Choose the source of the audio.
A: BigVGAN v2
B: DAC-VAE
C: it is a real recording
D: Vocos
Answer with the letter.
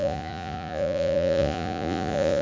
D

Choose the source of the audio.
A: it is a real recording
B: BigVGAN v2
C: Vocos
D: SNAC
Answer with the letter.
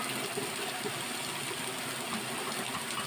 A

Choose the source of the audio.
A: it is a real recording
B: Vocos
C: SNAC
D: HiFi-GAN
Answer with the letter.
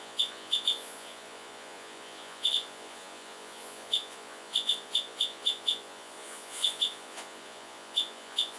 B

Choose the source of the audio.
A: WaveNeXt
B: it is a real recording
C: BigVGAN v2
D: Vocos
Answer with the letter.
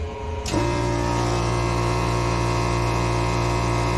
D